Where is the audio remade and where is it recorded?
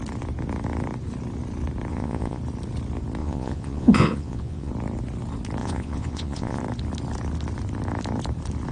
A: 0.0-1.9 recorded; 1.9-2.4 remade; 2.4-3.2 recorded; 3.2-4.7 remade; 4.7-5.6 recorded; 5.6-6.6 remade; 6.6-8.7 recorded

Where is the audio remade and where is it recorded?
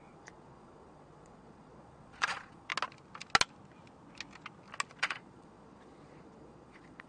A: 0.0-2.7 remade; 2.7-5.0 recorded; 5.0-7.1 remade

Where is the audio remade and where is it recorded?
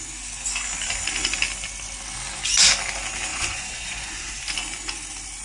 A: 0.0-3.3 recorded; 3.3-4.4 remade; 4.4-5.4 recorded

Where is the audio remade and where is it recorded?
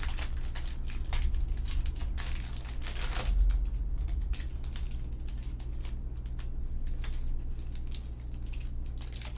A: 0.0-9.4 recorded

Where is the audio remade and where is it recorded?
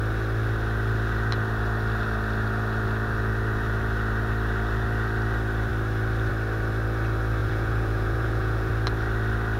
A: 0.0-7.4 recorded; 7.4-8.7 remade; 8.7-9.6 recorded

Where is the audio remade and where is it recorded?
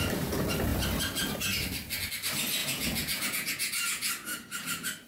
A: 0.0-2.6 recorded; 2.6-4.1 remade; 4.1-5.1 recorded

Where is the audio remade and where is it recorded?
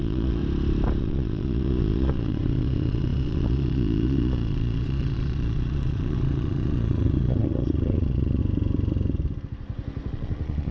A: 0.0-0.4 remade; 0.4-1.0 recorded; 1.0-8.4 remade; 8.4-10.1 recorded; 10.1-10.7 remade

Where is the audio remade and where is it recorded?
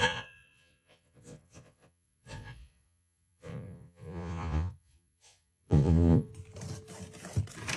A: 0.0-6.3 remade; 6.3-7.8 recorded